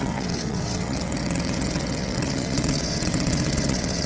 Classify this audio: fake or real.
fake